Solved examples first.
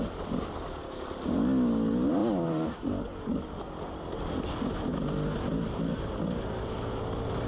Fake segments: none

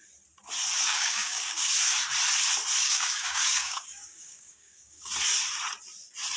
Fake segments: 0.9-1.7 (codec, DAC); 2.8-5.1

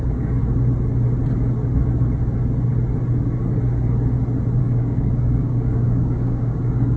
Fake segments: 0.0-0.4 (codec, DAC); 4.6-7.0

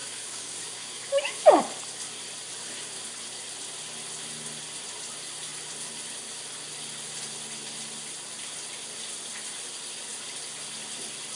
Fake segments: 0.0-1.6 (codec, DAC)

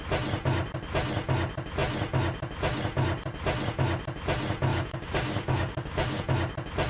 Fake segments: 4.7-6.2 (codec, DAC)